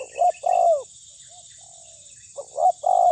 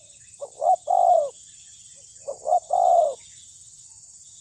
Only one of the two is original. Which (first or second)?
first